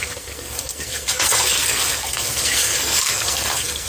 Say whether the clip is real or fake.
fake